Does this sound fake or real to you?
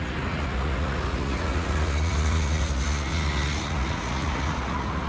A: fake